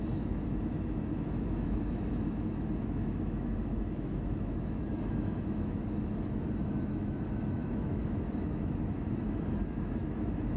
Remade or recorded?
remade